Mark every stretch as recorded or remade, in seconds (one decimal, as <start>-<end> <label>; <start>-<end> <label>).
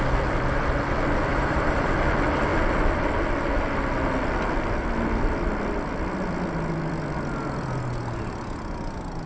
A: 0.0-1.3 recorded; 1.3-1.9 remade; 1.9-9.3 recorded